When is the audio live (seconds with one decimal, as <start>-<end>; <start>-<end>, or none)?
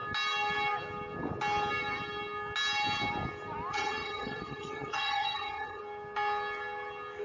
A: 0.0-3.7; 5.8-7.2